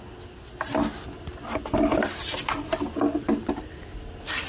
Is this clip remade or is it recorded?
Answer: recorded